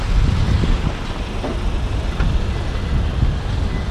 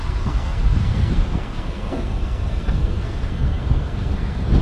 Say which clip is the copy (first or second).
second